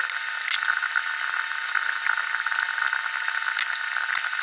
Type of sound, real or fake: real